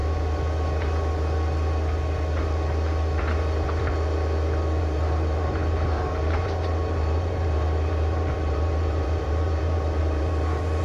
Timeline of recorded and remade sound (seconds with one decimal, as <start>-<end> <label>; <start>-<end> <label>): 0.0-4.8 recorded; 4.8-10.8 remade